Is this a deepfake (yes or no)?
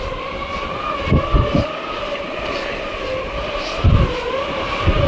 no